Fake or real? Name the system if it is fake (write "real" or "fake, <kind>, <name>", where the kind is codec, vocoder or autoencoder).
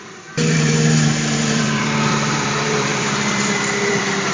fake, vocoder, BigVGAN v2